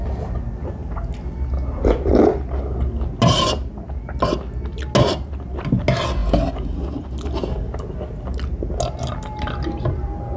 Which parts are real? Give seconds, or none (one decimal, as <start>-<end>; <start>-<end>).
0.0-10.4